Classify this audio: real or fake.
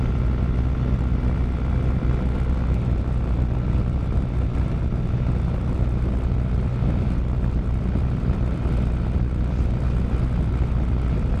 real